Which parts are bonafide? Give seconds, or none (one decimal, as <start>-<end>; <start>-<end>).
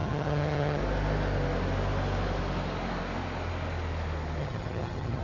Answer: 0.8-4.4